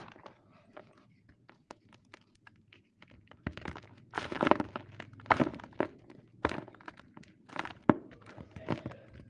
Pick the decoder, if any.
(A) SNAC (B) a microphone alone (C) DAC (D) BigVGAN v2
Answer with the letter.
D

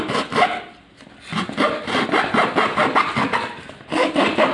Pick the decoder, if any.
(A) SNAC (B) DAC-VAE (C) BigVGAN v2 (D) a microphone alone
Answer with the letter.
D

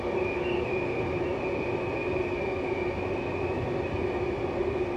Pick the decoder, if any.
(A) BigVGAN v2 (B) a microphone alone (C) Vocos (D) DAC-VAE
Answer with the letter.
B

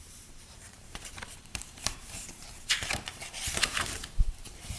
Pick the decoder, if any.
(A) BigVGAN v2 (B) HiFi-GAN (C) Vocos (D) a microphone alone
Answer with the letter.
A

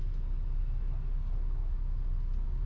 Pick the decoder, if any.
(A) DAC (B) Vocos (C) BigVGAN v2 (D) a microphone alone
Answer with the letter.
D